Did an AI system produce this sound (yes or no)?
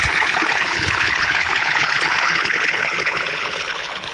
yes